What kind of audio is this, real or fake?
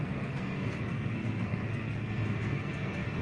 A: fake